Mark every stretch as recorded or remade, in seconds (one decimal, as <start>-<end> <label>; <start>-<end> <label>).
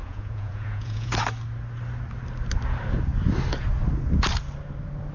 0.0-1.1 remade; 1.1-5.1 recorded